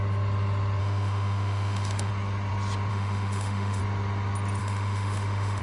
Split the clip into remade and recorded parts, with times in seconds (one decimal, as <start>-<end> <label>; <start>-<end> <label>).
0.0-0.8 recorded; 0.8-2.1 remade; 2.1-2.9 recorded; 2.9-3.8 remade; 3.8-4.6 recorded; 4.6-5.6 remade